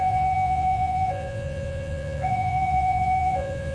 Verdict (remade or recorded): remade